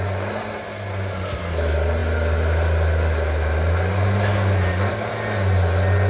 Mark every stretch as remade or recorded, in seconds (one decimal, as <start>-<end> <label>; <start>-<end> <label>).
0.0-6.1 recorded